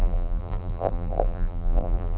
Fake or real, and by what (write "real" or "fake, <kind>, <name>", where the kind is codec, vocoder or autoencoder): fake, vocoder, BigVGAN v2